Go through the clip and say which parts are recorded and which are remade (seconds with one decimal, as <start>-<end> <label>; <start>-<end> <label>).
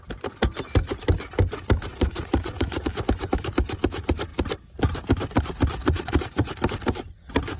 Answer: 0.0-1.9 recorded; 1.9-2.9 remade; 2.9-5.7 recorded; 5.7-6.5 remade; 6.5-7.6 recorded